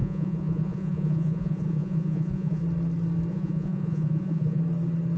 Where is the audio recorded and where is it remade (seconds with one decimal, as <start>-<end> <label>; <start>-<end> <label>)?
0.0-2.6 remade; 2.6-3.3 recorded; 3.3-4.6 remade; 4.6-5.2 recorded